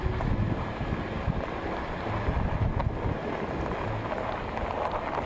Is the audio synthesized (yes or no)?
no